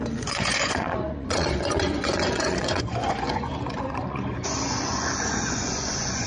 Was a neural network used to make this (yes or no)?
yes